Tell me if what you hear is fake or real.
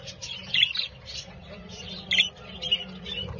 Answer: real